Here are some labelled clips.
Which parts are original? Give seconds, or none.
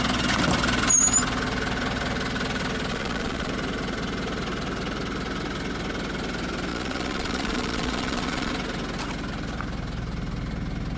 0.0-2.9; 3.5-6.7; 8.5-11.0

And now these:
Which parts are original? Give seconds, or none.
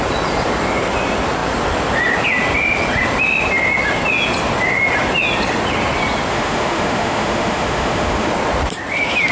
0.0-6.3; 8.3-9.3